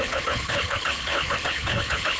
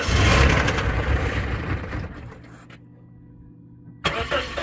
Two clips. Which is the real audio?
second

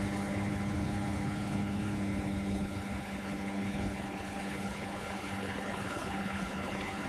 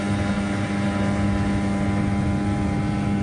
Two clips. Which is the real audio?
second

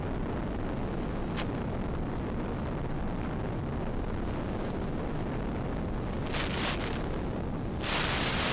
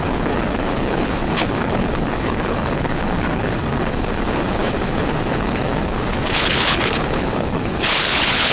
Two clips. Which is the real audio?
first